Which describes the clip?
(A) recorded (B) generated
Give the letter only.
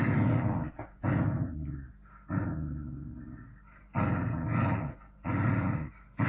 A